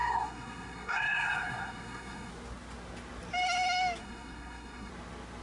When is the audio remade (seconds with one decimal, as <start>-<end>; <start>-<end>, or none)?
0.0-2.3; 4.0-4.9